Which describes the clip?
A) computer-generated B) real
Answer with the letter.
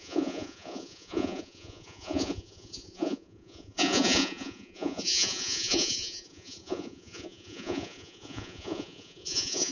A